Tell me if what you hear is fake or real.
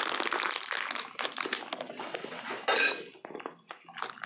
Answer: real